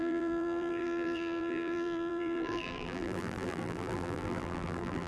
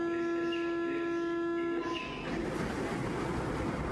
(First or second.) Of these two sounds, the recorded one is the second